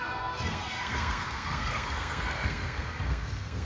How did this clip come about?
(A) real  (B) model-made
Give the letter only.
B